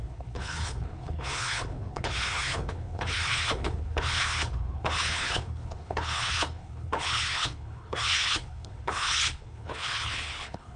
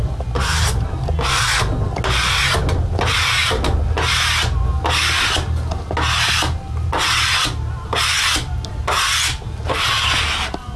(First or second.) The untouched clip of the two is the second